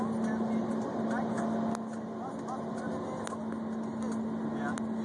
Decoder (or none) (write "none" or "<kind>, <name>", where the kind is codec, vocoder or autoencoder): none